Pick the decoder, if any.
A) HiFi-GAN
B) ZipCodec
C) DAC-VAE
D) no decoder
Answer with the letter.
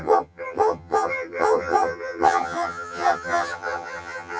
A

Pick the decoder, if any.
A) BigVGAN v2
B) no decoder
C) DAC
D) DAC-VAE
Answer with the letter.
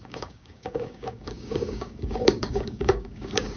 C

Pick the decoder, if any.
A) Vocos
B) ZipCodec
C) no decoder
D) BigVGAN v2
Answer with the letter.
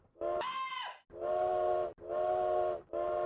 C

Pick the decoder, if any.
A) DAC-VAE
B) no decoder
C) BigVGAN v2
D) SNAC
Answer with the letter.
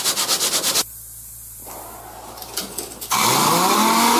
B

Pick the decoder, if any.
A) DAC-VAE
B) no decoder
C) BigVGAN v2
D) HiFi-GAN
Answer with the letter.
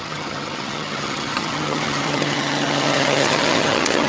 D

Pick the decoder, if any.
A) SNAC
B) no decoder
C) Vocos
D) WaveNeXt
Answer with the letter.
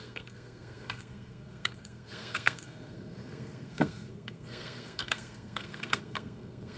A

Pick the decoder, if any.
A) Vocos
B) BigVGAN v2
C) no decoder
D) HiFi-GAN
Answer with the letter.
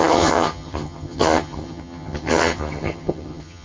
D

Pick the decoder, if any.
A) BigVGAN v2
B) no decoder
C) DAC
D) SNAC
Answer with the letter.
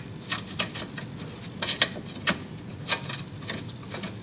B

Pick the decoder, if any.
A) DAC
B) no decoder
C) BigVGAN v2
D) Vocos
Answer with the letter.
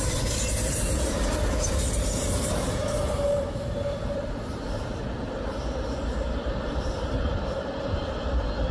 C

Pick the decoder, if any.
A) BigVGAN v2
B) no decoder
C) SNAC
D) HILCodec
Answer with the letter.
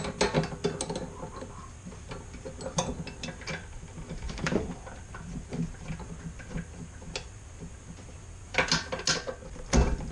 B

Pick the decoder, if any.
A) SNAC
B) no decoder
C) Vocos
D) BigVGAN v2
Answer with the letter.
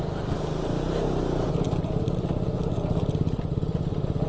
B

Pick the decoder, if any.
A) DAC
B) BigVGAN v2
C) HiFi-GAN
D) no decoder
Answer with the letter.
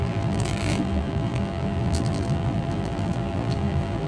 B